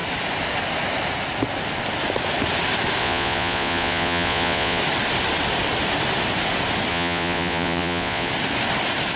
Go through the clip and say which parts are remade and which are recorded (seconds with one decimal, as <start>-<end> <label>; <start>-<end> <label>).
0.0-3.0 recorded; 3.0-4.8 remade; 4.8-6.9 recorded; 6.9-8.3 remade; 8.3-9.2 recorded